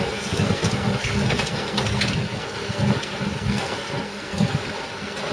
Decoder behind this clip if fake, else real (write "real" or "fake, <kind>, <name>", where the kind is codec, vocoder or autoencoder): fake, codec, SNAC